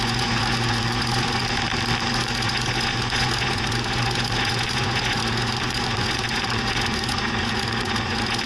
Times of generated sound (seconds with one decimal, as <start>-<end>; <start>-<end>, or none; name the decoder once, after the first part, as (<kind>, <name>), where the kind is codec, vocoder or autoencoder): 0.0-1.4 (vocoder, Vocos); 2.1-8.5